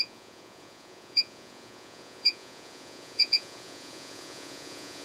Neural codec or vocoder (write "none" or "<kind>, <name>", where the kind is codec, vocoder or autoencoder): vocoder, Vocos